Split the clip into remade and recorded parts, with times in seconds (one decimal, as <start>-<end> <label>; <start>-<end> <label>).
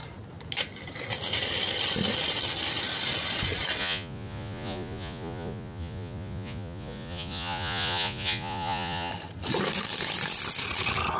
0.0-3.8 recorded; 3.8-9.1 remade; 9.1-11.2 recorded